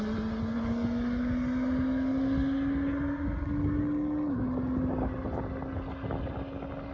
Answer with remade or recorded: recorded